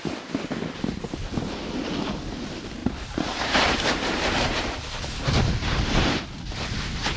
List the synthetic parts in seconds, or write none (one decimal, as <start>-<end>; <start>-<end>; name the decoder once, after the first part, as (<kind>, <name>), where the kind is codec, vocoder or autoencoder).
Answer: 2.8-6.2 (vocoder, BigVGAN v2)